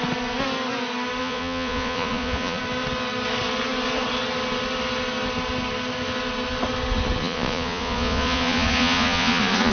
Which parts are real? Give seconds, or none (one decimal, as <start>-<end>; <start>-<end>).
0.0-1.2; 2.6-7.2